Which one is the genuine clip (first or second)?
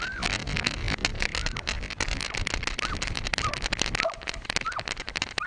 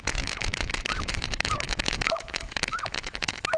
first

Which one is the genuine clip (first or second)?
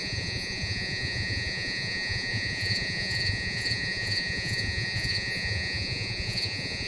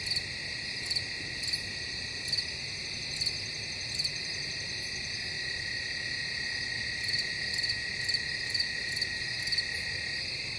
second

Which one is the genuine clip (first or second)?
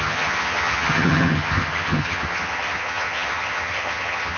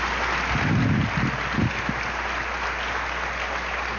second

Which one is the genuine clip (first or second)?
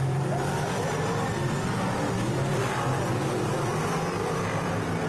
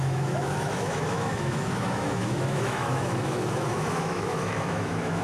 first